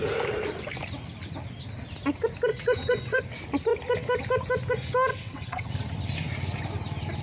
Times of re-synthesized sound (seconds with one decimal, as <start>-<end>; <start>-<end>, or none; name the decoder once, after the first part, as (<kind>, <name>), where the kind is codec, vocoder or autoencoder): 2.5-3.2 (vocoder, WaveNeXt); 5.1-5.7